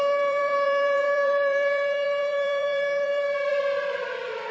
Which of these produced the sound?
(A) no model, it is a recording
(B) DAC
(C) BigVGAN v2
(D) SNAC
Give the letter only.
C